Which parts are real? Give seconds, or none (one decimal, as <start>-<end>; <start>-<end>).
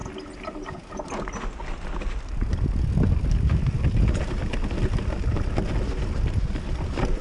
0.0-7.2